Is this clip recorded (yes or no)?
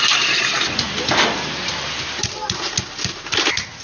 yes